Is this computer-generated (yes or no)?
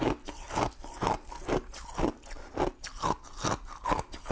no